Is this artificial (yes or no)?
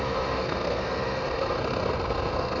yes